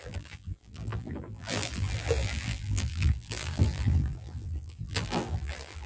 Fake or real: fake